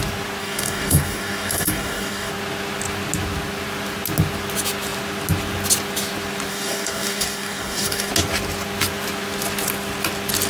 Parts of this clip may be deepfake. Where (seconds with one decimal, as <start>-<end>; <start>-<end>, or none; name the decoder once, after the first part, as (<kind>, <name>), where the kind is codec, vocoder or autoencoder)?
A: 0.4-2.3 (codec, DAC); 6.5-8.1